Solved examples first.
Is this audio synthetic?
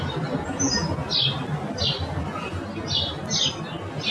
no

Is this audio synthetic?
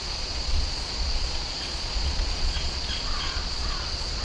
yes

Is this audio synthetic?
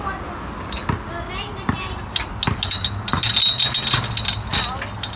no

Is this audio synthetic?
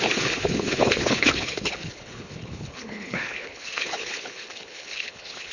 yes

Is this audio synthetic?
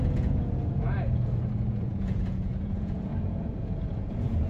yes